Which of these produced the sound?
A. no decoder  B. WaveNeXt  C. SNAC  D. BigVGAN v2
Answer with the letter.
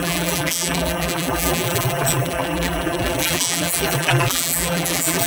D